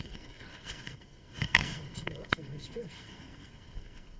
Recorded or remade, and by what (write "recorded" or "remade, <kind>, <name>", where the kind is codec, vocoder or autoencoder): remade, codec, SNAC